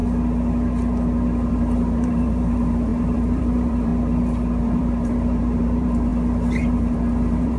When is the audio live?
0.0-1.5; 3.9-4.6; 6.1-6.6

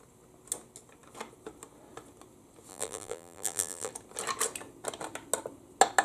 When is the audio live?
0.0-2.7; 3.9-6.0

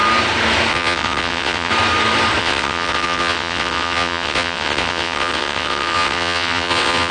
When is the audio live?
0.0-0.7; 1.7-2.4

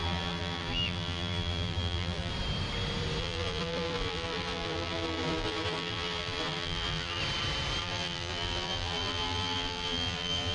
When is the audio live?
2.3-3.2; 7.2-7.8

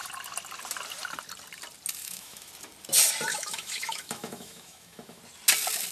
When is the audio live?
0.0-2.0; 2.5-3.3; 5.2-5.9